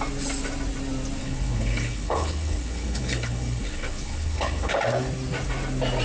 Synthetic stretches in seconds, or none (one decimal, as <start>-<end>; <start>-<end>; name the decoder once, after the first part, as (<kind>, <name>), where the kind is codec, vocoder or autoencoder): 1.2-4.8 (codec, HILCodec)